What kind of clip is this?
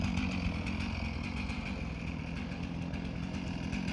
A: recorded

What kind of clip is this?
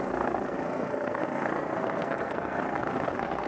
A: remade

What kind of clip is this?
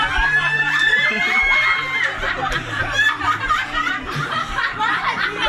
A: remade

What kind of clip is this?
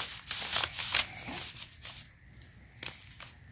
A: recorded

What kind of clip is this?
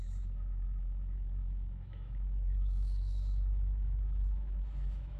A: remade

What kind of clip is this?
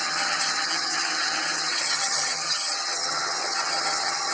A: remade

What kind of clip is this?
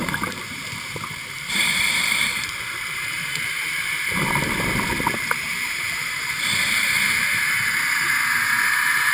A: remade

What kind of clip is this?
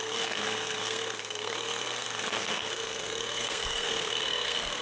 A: remade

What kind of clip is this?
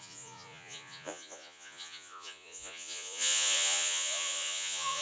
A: remade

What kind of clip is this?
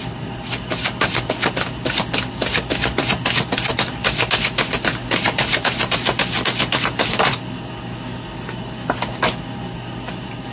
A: recorded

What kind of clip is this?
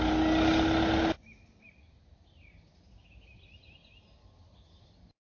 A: recorded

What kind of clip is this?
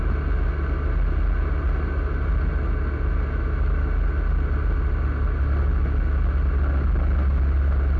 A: recorded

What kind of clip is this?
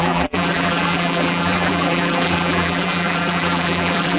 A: remade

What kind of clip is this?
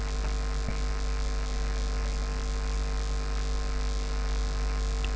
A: recorded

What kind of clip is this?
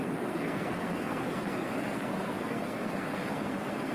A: remade